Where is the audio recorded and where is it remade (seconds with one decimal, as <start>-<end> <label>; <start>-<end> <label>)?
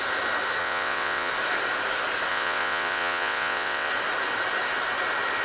0.0-0.6 recorded; 0.6-1.3 remade; 1.3-2.3 recorded; 2.3-3.9 remade; 3.9-5.4 recorded